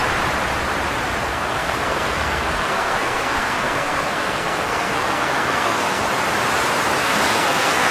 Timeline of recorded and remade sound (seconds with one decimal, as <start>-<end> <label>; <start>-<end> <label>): 0.0-1.3 recorded; 1.3-6.0 remade; 6.0-7.0 recorded; 7.0-7.9 remade